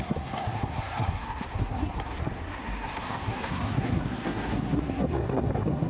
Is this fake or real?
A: fake